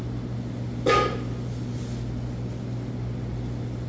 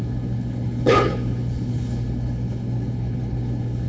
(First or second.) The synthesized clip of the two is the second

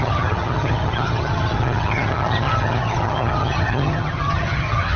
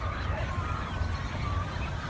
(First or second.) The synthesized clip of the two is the first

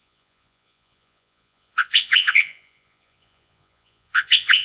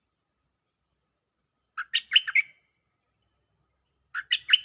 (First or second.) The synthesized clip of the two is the first